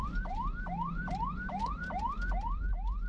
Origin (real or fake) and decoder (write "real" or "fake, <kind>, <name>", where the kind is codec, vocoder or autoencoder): fake, vocoder, BigVGAN v2